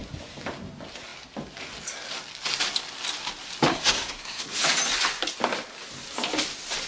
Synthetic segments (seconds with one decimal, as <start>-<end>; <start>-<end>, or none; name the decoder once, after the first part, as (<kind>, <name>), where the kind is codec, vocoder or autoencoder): 3.7-4.4 (codec, SNAC)